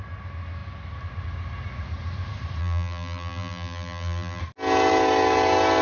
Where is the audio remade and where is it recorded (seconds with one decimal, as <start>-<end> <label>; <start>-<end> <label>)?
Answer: 0.0-2.6 recorded; 2.6-4.4 remade; 4.4-5.8 recorded